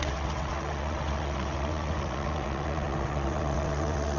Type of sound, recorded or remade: remade